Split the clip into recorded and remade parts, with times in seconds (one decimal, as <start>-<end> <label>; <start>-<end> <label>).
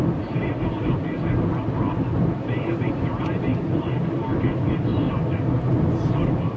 0.0-2.1 recorded; 2.1-2.9 remade; 2.9-3.5 recorded; 3.5-4.4 remade; 4.4-6.6 recorded